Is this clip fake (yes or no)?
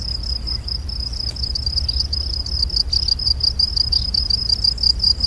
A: no